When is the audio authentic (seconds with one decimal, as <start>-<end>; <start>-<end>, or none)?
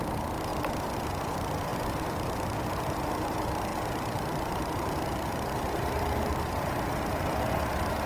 0.0-0.5; 1.1-1.7; 3.1-3.7